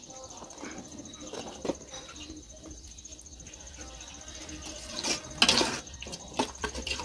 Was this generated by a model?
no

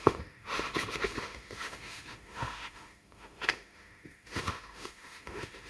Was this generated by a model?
yes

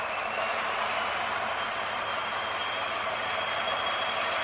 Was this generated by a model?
yes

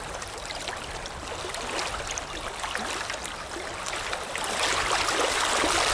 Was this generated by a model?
no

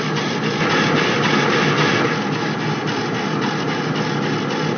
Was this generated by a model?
no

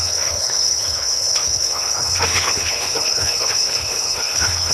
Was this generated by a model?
yes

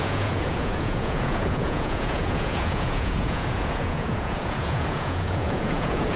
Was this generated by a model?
yes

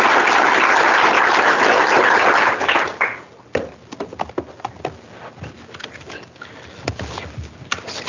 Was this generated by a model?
no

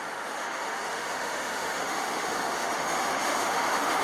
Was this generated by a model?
yes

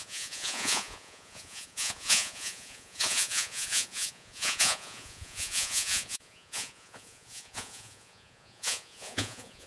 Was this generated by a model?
yes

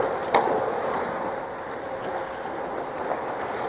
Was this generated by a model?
no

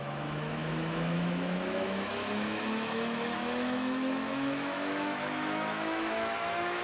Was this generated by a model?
yes